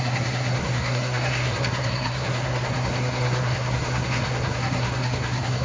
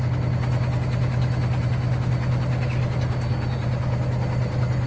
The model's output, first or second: first